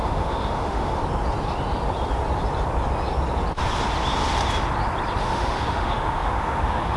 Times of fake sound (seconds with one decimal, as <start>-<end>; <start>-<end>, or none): 0.0-1.0; 5.2-7.0